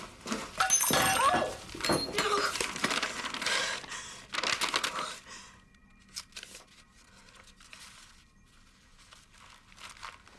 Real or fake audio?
real